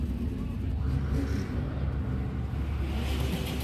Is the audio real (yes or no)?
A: yes